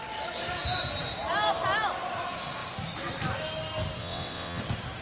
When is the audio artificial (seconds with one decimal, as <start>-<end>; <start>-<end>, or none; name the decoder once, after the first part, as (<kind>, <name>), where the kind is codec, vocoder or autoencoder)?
4.0-4.6 (vocoder, WaveNeXt)